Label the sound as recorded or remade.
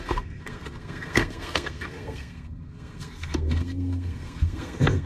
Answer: remade